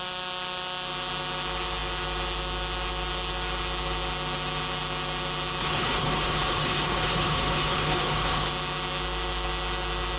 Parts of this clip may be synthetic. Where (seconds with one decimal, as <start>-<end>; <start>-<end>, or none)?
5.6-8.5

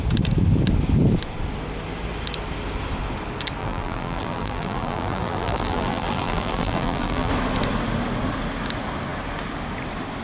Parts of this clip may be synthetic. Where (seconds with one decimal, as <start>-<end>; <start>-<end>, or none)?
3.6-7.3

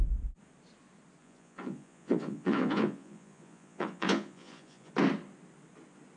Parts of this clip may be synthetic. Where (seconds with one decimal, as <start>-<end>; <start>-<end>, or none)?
1.2-4.9